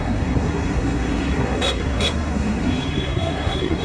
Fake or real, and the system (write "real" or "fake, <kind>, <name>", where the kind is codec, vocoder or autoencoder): fake, codec, SNAC